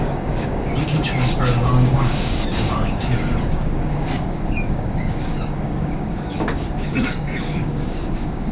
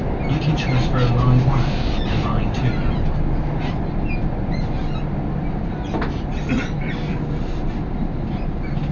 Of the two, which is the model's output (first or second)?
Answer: first